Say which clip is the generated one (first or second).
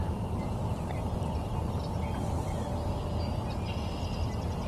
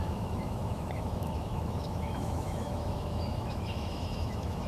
second